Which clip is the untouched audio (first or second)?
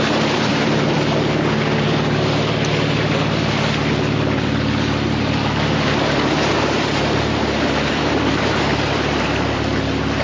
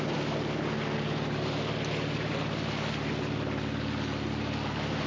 second